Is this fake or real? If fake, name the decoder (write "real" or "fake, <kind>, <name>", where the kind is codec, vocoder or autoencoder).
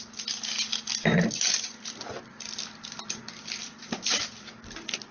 fake, vocoder, BigVGAN v2